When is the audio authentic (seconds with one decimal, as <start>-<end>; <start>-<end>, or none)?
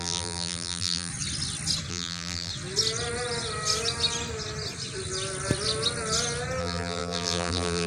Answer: 1.1-1.9; 2.5-6.6